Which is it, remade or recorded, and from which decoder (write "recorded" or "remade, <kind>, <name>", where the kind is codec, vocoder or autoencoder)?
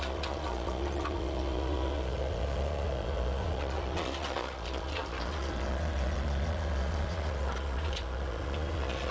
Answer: remade, vocoder, Vocos